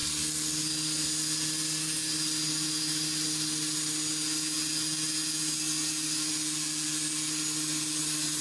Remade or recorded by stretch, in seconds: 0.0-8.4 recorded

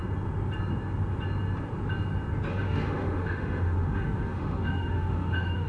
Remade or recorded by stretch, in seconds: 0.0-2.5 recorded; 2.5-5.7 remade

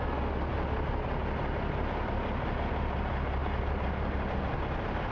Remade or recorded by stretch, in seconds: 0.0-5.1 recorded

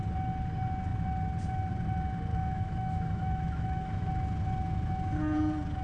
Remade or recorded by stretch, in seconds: 0.0-2.3 recorded; 2.3-4.1 remade; 4.1-5.8 recorded

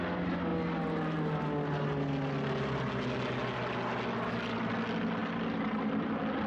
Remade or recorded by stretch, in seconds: 0.0-6.5 recorded

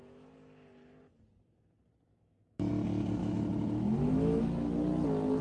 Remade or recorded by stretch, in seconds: 0.0-2.1 recorded; 2.1-2.7 remade; 2.7-3.2 recorded; 3.2-4.4 remade; 4.4-5.4 recorded